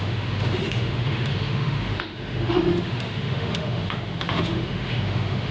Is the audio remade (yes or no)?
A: yes